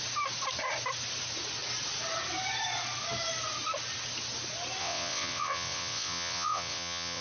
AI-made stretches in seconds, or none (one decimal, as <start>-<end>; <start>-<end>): 4.8-7.2